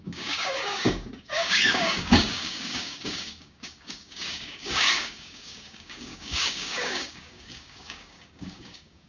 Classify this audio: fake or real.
fake